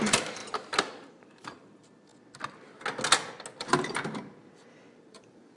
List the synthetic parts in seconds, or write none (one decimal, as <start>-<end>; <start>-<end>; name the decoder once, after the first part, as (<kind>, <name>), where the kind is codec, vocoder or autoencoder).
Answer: 0.0-0.4 (vocoder, BigVGAN v2); 1.1-2.1; 3.6-5.6